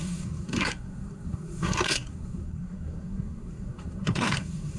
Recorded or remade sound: remade